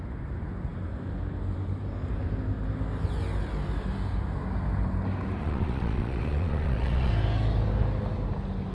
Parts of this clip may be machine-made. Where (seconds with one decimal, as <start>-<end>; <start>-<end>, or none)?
5.4-7.1